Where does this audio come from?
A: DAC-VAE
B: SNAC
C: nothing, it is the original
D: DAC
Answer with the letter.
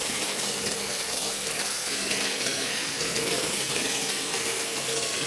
B